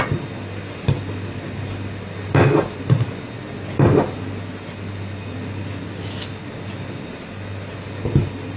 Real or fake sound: real